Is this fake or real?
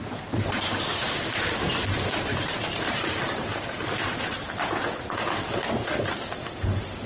fake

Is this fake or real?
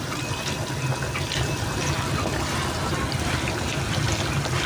real